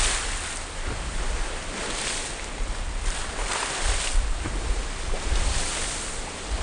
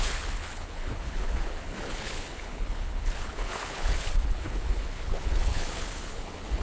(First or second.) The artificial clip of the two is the second